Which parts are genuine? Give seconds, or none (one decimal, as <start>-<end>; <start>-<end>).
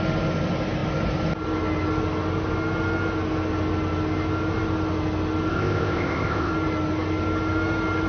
0.0-5.5; 6.5-8.1